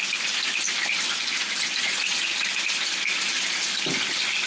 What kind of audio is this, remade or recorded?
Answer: recorded